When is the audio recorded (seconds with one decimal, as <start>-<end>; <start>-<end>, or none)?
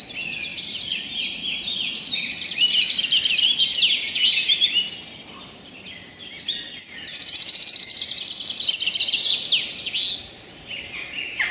0.0-0.5; 1.4-11.5